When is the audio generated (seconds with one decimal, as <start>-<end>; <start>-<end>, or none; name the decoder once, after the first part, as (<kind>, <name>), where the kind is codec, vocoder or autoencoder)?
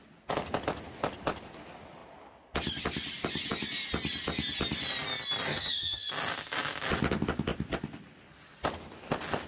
5.5-6.1 (vocoder, HiFi-GAN)